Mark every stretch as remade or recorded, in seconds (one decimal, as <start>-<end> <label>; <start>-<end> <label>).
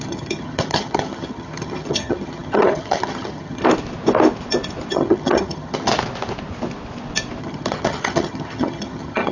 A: 0.0-3.6 remade; 3.6-4.9 recorded; 4.9-5.9 remade; 5.9-7.4 recorded; 7.4-9.3 remade